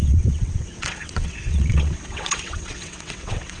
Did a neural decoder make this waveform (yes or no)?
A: yes